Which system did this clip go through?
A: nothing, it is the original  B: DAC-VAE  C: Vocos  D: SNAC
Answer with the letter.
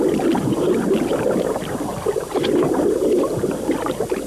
A